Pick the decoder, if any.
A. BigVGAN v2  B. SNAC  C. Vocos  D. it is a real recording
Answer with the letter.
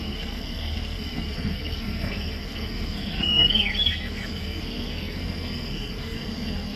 B